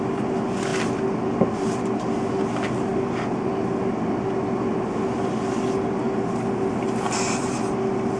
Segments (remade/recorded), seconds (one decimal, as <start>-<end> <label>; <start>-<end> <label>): 0.0-8.2 recorded